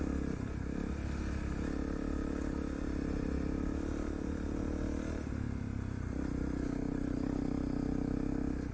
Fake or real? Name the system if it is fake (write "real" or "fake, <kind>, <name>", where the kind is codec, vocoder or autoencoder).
real